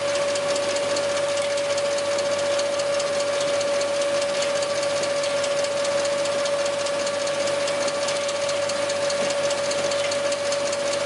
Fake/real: real